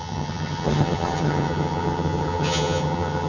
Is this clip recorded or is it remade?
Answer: remade